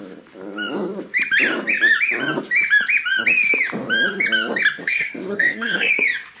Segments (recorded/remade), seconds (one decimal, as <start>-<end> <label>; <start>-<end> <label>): 0.0-4.8 recorded; 4.8-5.9 remade; 5.9-6.4 recorded